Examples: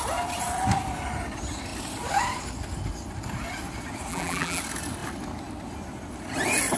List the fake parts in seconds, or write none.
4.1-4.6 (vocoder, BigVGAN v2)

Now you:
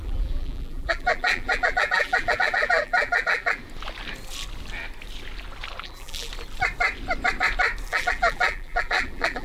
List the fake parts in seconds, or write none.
0.0-3.6 (vocoder, BigVGAN v2); 5.8-6.3; 7.9-9.4

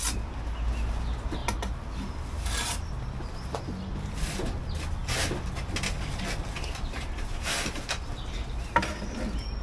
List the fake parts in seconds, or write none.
none

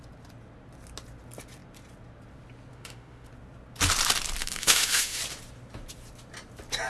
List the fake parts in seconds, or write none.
2.7-3.3 (autoencoder, DAC-VAE); 4.4-5.2

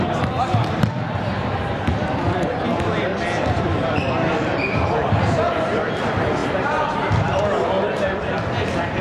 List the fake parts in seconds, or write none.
0.0-3.1 (vocoder, BigVGAN v2); 5.5-6.4; 7.4-9.0